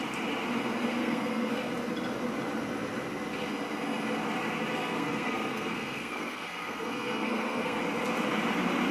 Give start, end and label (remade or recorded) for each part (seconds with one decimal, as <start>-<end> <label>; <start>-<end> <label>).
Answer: 0.0-1.0 recorded; 1.0-1.7 remade; 1.7-4.7 recorded; 4.7-7.8 remade; 7.8-8.9 recorded